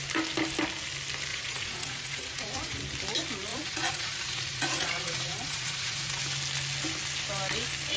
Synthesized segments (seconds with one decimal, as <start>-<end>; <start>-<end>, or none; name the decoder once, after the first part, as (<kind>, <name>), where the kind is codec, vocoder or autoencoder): 1.3-2.8 (vocoder, Vocos); 3.5-6.2